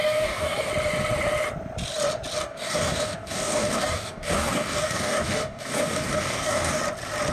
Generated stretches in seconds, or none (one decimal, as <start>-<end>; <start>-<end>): 0.0-0.7; 2.4-6.8